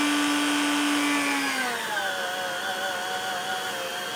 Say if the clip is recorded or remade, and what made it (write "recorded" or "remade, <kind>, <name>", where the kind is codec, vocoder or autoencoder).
recorded